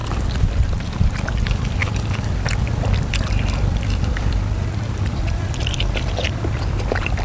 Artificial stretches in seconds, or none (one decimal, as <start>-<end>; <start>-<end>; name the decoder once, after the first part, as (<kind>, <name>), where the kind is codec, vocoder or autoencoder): 0.7-7.2 (vocoder, BigVGAN v2)